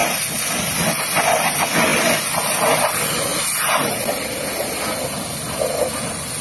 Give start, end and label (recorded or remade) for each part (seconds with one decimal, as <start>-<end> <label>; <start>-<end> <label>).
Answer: 0.0-6.4 recorded